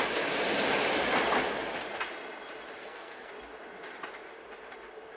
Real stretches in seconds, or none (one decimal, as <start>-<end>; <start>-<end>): 0.0-2.8; 3.3-5.2